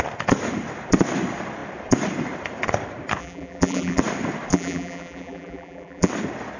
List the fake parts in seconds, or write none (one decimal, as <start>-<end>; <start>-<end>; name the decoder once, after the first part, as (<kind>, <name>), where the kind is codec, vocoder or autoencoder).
3.2-4.0 (vocoder, BigVGAN v2); 4.5-6.1